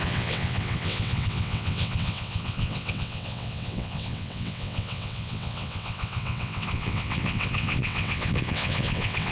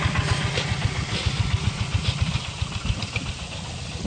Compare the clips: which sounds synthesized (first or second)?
first